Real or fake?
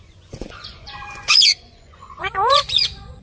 fake